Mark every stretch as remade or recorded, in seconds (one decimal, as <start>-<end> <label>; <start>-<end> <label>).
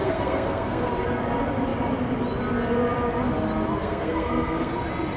0.0-0.9 remade; 0.9-3.8 recorded; 3.8-4.7 remade; 4.7-5.2 recorded